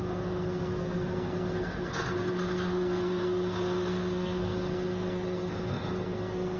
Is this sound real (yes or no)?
no